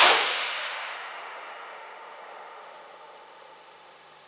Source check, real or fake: fake